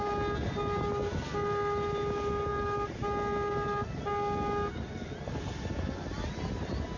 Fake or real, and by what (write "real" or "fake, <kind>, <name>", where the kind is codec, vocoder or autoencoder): real